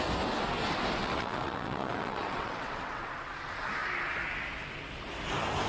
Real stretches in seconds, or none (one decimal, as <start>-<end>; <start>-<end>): 0.0-1.0; 3.1-5.7